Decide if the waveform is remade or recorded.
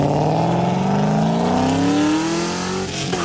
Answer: recorded